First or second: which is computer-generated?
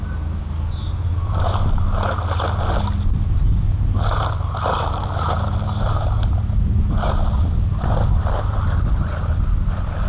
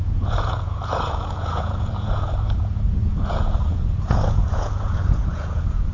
second